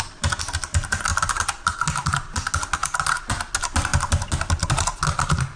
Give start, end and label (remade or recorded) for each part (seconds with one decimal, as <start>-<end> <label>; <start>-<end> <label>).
0.0-1.1 recorded; 1.1-1.8 remade; 1.8-2.8 recorded; 2.8-3.5 remade; 3.5-5.6 recorded